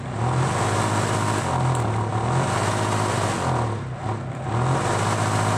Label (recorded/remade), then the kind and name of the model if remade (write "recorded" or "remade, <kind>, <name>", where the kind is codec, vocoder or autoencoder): recorded